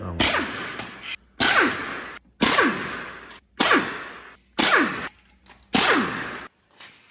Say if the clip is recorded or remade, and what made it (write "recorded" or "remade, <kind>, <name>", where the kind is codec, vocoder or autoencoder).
recorded